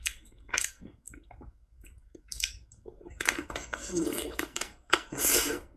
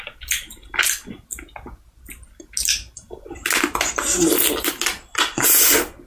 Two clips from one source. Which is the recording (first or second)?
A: second